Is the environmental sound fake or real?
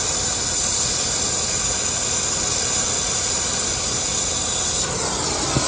real